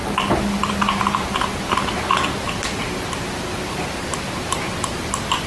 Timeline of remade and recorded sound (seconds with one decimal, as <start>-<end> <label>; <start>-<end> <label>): 0.0-5.5 recorded